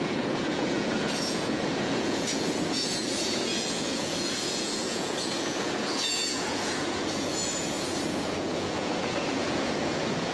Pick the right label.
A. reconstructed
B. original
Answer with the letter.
A